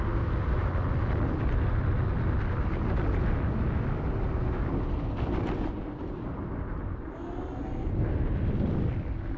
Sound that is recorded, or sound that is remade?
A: recorded